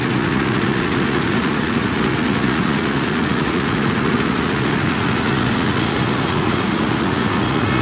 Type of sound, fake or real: fake